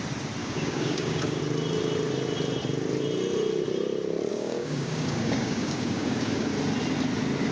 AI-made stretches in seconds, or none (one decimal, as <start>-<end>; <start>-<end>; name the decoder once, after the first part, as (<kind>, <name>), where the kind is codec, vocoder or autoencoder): 0.4-1.4 (codec, DAC); 4.3-6.5

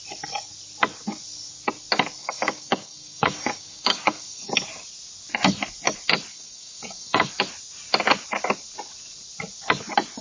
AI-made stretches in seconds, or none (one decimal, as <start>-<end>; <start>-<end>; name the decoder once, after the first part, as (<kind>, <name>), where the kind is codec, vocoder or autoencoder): 2.2-4.5 (codec, DAC); 6.3-7.3

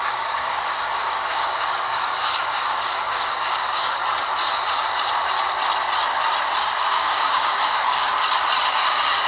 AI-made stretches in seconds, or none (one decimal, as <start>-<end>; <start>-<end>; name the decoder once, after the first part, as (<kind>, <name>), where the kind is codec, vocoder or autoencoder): 0.0-4.0 (codec, DAC); 6.6-8.1; 8.7-9.3

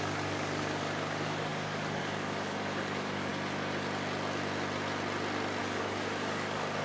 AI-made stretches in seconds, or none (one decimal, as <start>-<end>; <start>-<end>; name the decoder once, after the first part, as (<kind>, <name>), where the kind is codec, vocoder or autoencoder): 0.0-3.3 (codec, DAC); 5.6-6.8

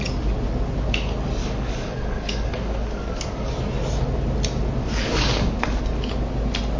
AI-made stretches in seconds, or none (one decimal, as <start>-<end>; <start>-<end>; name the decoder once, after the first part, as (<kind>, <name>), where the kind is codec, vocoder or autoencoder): 1.4-3.5 (codec, DAC); 4.8-5.8

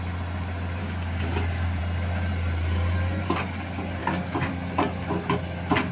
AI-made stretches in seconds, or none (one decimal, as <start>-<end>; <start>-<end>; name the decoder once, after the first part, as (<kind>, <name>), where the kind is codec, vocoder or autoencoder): 0.8-1.8 (codec, DAC); 4.0-4.5

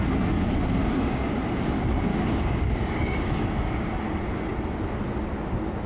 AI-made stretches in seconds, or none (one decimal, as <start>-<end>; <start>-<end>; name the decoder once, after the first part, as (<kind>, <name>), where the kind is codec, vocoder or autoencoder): 0.8-1.4 (codec, DAC); 2.1-4.0